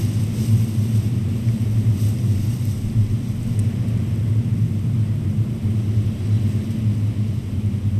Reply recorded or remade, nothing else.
recorded